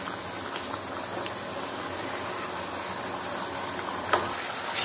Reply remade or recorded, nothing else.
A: recorded